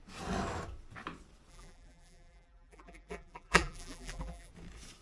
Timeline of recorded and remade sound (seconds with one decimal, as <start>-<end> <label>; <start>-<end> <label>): 0.0-1.5 recorded; 1.5-4.5 remade; 4.5-5.0 recorded